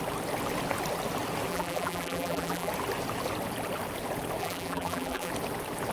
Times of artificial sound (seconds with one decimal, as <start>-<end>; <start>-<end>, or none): 1.5-2.7; 4.4-5.3